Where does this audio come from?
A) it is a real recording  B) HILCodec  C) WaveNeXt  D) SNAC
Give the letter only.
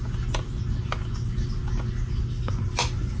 A